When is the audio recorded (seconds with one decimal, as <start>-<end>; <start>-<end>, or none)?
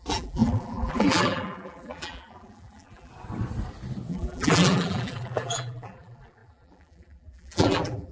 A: 3.1-4.1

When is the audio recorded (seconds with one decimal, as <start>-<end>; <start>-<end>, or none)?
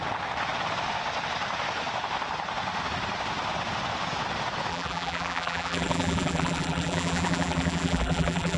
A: 0.0-4.7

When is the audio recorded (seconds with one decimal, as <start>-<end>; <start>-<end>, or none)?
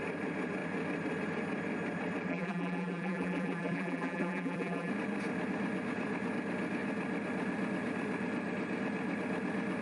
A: 0.0-2.3; 4.9-9.8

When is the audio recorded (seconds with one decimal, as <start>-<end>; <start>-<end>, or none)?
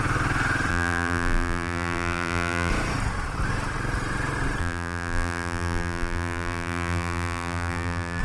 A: 0.0-0.7; 2.7-4.6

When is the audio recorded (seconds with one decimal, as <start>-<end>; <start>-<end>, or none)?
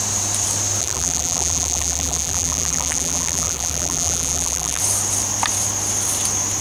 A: 0.0-0.8; 4.8-6.6